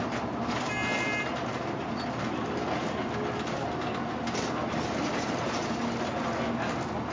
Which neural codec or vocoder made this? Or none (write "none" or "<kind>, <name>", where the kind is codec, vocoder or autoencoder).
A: none